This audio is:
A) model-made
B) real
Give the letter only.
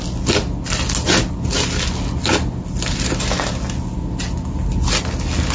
B